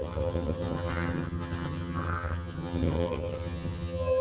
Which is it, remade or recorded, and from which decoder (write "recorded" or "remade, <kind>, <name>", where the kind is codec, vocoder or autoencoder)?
remade, vocoder, HiFi-GAN